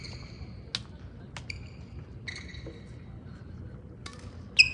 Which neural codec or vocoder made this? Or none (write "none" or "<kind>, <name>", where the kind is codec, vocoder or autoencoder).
none